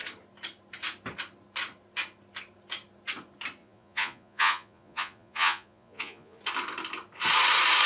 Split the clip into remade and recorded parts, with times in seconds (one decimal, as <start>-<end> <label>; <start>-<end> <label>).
0.0-3.6 recorded; 3.6-6.4 remade; 6.4-7.9 recorded